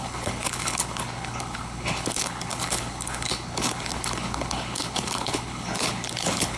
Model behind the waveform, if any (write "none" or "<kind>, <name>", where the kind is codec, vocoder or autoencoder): codec, HILCodec